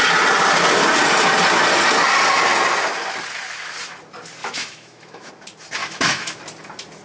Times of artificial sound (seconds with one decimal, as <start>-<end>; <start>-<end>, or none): 4.4-5.3; 5.8-6.4